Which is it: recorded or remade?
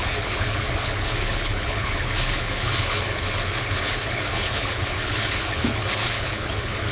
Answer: remade